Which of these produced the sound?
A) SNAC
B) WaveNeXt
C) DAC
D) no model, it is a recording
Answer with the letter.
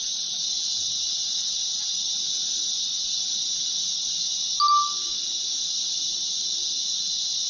D